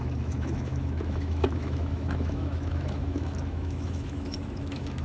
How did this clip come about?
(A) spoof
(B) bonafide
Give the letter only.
A